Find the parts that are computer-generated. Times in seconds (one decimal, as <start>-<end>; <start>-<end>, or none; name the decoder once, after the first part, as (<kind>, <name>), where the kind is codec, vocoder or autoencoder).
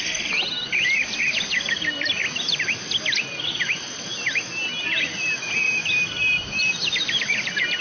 0.0-7.8 (vocoder, BigVGAN v2)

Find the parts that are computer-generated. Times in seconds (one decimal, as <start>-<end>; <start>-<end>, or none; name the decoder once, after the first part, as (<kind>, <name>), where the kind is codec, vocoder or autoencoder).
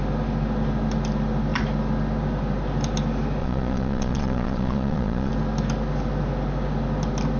3.4-5.3 (vocoder, Vocos)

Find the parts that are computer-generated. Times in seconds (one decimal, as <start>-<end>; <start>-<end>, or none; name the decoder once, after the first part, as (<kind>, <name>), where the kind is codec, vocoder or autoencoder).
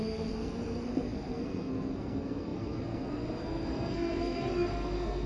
0.0-5.3 (codec, SNAC)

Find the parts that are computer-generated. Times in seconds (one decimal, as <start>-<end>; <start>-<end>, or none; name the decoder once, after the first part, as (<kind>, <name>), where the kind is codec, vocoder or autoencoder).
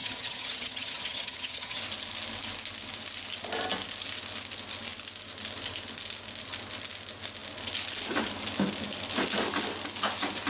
0.0-1.8 (vocoder, HiFi-GAN)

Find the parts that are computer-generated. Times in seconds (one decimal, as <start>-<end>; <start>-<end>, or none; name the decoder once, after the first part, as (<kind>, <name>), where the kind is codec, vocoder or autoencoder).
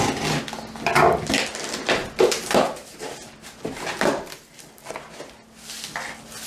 2.0-4.8 (vocoder, BigVGAN v2)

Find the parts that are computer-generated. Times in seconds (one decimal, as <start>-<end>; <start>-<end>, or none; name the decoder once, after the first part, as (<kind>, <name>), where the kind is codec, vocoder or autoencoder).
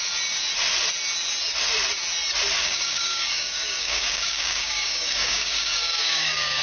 2.6-6.6 (codec, DAC)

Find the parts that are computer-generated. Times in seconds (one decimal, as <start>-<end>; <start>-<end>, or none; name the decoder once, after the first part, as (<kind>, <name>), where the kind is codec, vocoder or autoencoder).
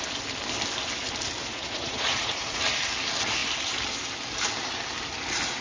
1.5-2.6 (vocoder, Vocos)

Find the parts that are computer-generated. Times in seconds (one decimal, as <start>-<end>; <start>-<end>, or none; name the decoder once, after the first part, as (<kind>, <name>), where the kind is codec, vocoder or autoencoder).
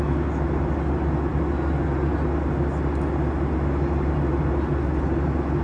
none